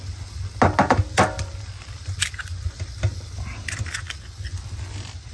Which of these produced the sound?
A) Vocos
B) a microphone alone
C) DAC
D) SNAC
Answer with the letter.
B